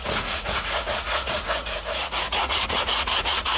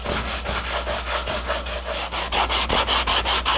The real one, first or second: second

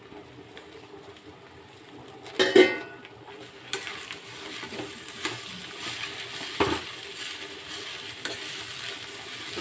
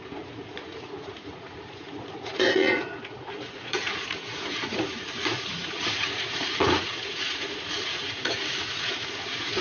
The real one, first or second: first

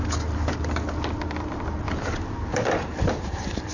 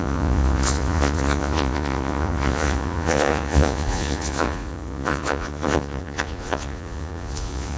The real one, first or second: first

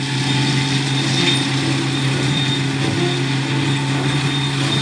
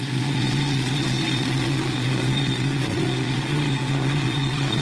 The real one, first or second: first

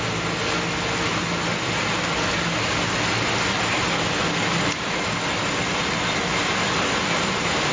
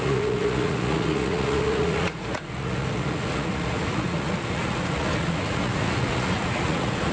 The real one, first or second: first